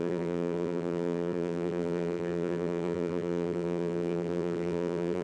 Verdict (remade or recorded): remade